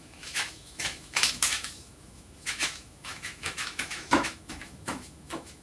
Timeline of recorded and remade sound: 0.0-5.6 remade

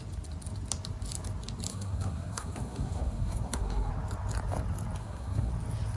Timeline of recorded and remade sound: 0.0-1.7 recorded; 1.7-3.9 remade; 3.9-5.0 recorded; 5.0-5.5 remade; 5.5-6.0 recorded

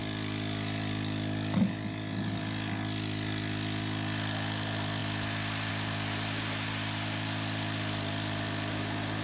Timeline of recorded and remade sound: 0.0-9.2 recorded

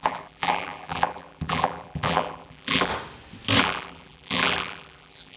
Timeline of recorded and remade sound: 0.0-2.9 remade; 2.9-3.6 recorded; 3.6-5.4 remade

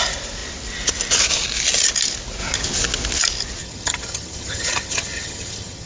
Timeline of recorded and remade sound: 0.0-3.6 recorded; 3.6-5.9 remade